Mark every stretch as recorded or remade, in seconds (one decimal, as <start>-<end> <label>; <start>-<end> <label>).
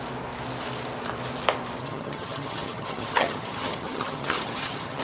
0.0-1.8 recorded; 1.8-5.0 remade